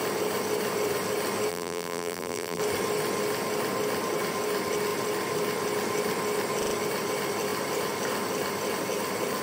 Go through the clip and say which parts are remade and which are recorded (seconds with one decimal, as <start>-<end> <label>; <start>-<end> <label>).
0.0-1.5 recorded; 1.5-2.6 remade; 2.6-9.4 recorded